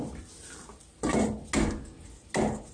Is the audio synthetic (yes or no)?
no